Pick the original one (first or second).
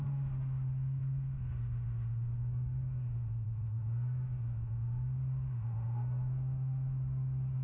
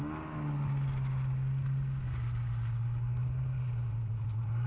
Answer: second